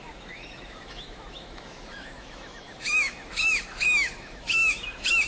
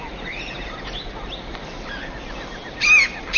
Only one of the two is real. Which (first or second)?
second